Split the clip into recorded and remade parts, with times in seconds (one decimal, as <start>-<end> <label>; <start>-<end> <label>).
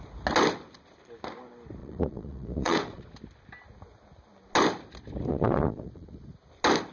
0.0-1.8 recorded; 1.8-3.1 remade; 3.1-5.3 recorded; 5.3-6.3 remade; 6.3-6.9 recorded